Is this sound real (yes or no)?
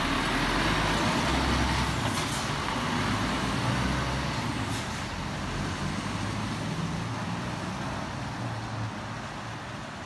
yes